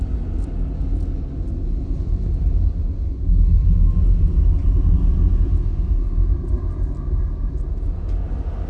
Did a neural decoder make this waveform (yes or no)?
no